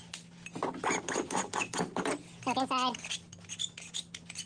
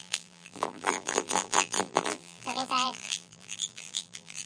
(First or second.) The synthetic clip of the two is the second